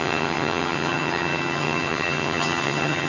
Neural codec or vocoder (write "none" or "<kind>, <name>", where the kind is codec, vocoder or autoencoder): vocoder, HiFi-GAN